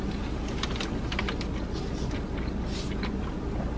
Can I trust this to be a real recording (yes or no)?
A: yes